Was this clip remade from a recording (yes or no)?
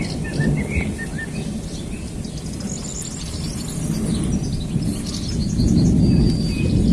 no